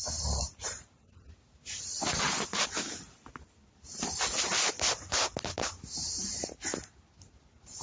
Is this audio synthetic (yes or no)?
no